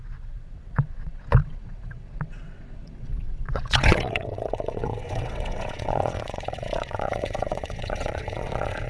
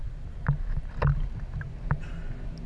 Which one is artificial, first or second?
first